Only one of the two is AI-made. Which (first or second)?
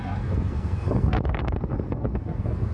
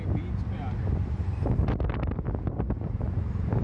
first